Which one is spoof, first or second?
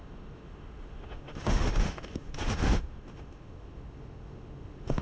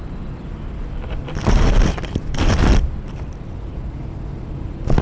first